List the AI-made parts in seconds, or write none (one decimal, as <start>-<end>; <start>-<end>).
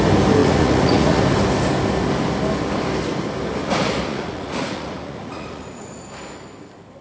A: 0.4-1.2; 3.6-5.9